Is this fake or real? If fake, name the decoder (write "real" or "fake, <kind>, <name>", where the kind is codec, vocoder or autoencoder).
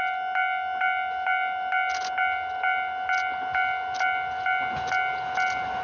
real